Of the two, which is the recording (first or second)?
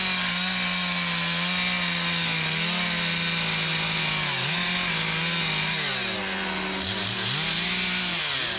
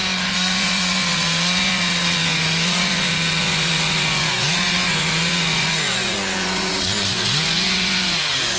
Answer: first